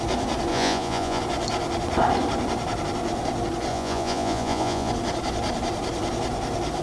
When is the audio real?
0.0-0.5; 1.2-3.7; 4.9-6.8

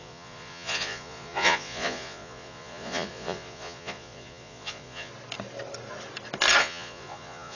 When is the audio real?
5.1-6.6

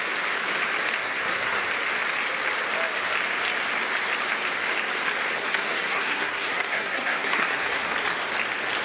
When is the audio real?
0.0-1.0; 1.6-5.4; 7.8-8.8

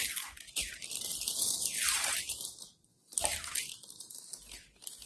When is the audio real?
0.0-5.1

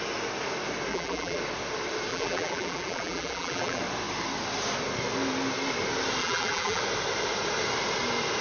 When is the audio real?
0.0-0.9; 1.4-2.1; 3.8-6.2; 6.8-8.4

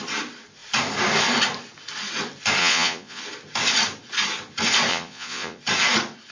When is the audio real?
0.0-2.6; 3.2-4.9; 5.6-6.3

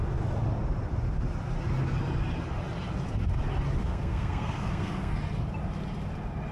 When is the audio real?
0.0-3.8; 5.2-6.5

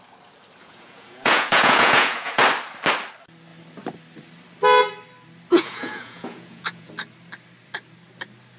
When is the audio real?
0.0-0.6; 2.4-5.5; 6.9-8.6